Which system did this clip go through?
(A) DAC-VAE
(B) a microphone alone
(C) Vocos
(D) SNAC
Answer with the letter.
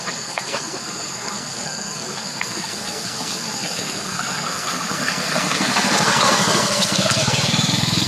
D